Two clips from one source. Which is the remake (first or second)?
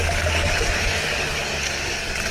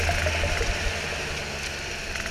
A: first